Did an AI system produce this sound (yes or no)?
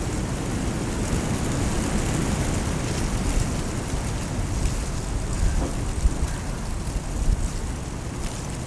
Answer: no